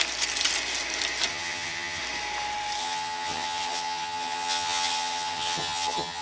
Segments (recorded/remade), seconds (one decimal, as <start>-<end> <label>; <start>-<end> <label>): 0.0-1.3 recorded; 1.3-2.0 remade; 2.0-2.8 recorded; 2.8-6.2 remade